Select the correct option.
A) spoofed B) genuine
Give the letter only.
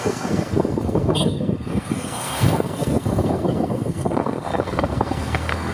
A